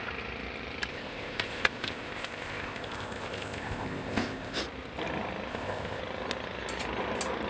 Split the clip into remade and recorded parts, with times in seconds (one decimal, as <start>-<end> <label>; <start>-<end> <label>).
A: 0.0-0.9 recorded; 0.9-4.6 remade; 4.6-5.5 recorded; 5.5-6.0 remade; 6.0-7.5 recorded